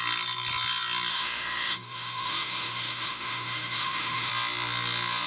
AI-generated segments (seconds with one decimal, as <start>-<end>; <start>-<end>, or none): 1.1-4.3